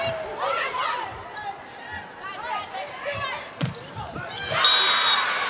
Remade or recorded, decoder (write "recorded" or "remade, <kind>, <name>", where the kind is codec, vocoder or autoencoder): recorded